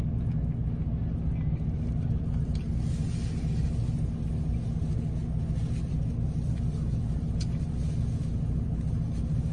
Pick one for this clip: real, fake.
real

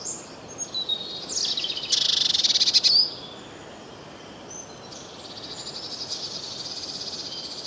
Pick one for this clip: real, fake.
real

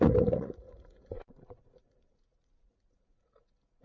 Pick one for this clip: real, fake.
fake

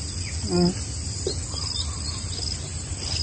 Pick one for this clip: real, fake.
real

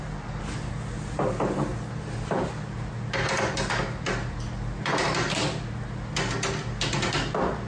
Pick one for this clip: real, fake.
real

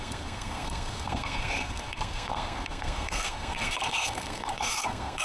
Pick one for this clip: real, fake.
fake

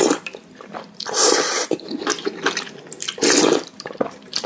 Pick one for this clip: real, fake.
fake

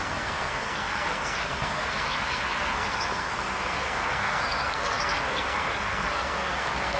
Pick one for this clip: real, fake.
fake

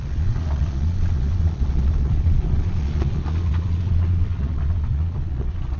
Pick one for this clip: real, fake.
fake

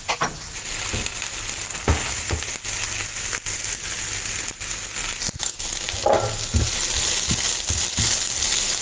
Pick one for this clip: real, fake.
real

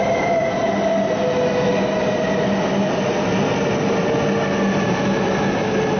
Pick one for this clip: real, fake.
real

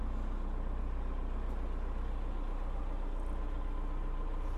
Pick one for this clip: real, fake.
real